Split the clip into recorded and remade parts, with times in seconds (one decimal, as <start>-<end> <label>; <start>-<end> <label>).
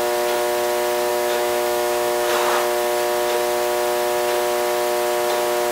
0.0-1.1 recorded; 1.1-2.3 remade; 2.3-5.7 recorded